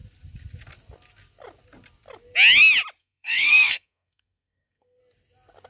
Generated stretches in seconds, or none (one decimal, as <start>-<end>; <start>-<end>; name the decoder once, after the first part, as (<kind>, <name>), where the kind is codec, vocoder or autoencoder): 3.0-5.0 (codec, SNAC)